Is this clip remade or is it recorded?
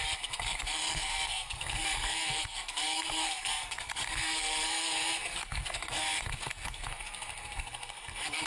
remade